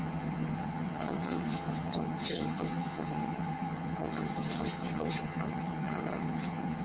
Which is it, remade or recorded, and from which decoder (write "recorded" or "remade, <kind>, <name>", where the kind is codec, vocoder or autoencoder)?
remade, vocoder, HiFi-GAN